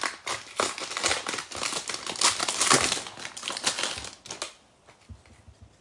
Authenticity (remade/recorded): recorded